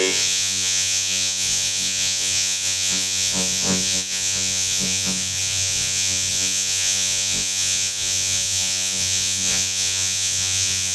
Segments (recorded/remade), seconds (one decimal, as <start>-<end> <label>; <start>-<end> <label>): 0.0-10.9 remade